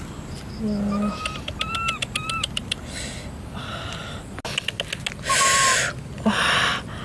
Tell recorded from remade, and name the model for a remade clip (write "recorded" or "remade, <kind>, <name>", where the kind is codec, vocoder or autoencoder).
recorded